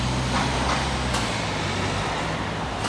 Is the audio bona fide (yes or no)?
yes